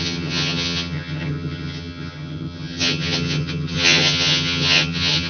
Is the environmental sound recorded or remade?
remade